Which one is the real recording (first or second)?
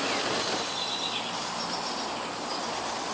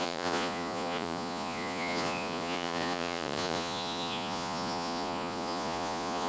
first